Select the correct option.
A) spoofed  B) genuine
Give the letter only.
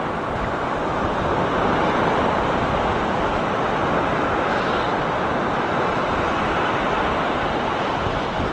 B